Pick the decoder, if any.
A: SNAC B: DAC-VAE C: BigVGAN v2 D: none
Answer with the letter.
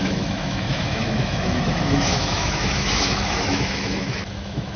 B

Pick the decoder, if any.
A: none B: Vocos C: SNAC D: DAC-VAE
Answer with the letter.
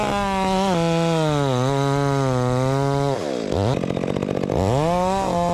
A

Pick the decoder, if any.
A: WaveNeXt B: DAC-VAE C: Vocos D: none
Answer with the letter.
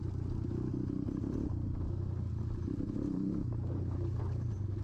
D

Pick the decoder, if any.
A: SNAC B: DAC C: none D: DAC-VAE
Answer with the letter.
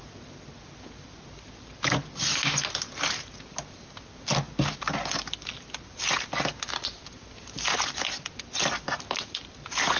C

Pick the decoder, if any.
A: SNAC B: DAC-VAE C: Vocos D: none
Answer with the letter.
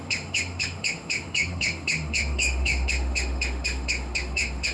B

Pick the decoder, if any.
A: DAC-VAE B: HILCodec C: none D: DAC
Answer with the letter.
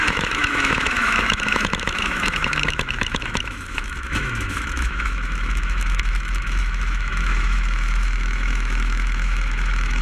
A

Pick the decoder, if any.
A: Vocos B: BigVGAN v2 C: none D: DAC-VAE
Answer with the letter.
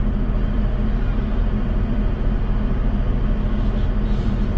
C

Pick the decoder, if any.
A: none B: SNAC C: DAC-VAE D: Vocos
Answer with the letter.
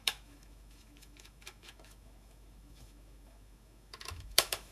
C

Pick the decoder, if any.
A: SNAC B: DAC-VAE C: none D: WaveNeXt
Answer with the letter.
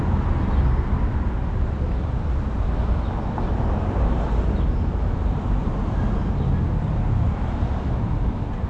C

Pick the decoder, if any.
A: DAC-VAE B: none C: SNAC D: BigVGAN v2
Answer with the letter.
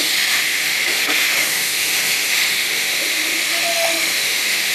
A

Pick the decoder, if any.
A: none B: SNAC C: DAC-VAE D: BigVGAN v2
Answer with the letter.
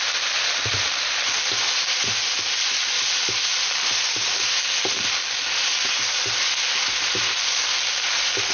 A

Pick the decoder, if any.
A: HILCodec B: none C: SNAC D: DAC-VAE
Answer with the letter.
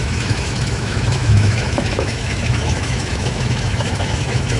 D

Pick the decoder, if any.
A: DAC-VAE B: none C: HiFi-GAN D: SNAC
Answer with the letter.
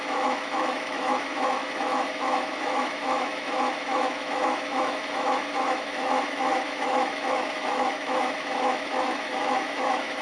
A